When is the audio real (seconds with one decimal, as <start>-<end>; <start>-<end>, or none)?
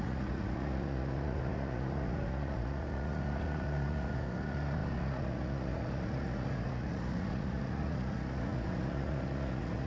none